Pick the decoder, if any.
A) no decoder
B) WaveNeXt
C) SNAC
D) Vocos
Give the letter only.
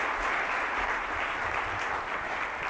A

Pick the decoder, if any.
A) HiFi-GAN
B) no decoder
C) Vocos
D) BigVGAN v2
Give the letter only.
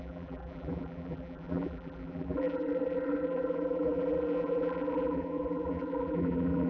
D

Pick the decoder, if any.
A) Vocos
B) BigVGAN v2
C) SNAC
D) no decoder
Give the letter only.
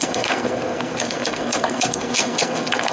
C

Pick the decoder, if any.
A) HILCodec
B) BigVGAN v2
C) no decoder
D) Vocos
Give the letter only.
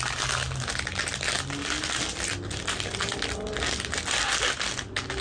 C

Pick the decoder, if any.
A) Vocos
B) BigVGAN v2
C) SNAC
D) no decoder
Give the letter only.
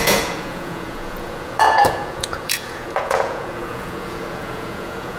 A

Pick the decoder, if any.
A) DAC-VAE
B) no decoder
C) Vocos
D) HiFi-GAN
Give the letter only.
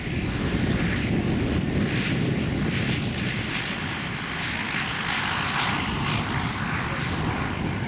B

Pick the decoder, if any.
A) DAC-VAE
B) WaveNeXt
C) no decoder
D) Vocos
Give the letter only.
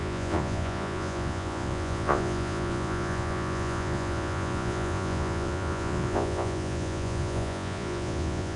D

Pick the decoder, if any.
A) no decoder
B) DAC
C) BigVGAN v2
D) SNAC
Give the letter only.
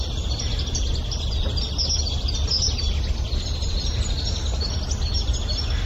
A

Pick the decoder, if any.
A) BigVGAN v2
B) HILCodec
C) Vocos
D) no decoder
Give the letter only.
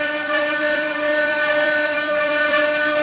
A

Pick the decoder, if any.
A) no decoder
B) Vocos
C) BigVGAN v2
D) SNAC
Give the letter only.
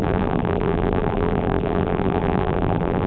C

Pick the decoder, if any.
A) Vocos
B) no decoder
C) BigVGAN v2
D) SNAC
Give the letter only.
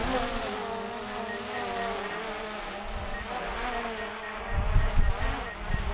B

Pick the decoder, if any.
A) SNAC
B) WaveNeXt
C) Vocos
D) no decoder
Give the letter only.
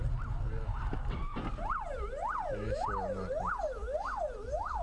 D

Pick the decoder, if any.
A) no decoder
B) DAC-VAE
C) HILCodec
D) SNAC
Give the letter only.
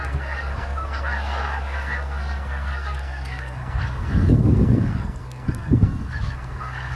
D